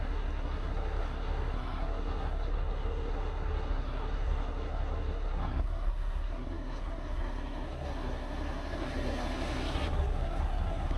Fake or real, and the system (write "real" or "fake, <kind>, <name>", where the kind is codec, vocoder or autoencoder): fake, codec, SNAC